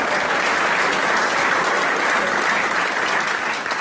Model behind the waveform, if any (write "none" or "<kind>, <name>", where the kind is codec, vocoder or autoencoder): none